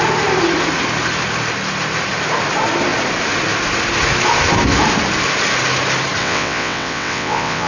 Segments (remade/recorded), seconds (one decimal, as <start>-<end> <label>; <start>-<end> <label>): 0.0-6.2 recorded; 6.2-7.7 remade